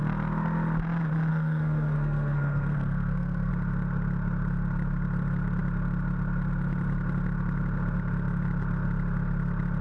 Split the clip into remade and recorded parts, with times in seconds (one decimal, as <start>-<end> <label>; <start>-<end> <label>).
0.0-1.3 recorded; 1.3-3.5 remade; 3.5-9.8 recorded